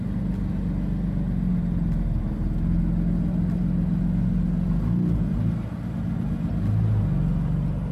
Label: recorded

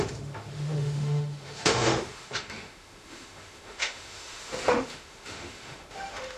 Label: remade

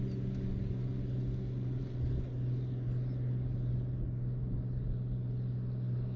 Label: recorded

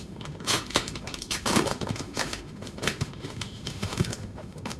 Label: remade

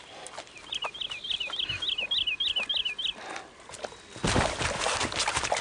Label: recorded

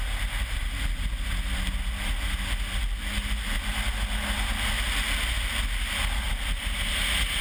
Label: recorded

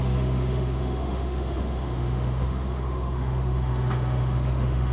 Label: remade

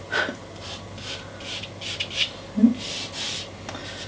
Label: recorded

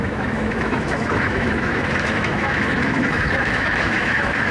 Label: remade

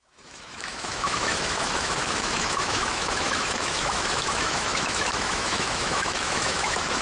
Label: remade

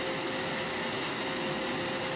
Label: recorded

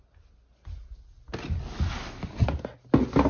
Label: recorded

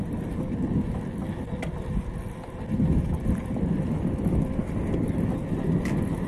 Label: recorded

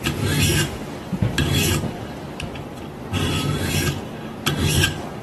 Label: recorded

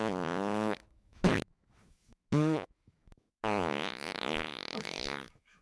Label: remade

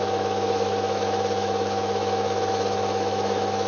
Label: remade